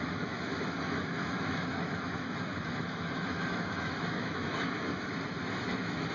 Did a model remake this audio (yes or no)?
yes